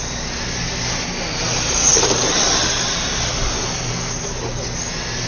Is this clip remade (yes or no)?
no